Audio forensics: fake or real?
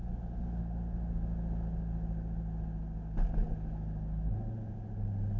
real